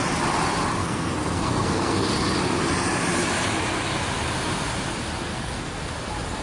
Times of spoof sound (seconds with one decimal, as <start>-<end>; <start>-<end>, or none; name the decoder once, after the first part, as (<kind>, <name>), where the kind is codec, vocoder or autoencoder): 0.8-2.1 (codec, SNAC); 5.3-5.8